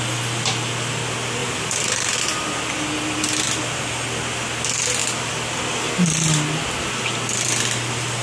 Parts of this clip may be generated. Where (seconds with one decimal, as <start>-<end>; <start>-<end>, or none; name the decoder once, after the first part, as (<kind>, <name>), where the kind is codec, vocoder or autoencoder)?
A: 1.4-2.2 (vocoder, BigVGAN v2)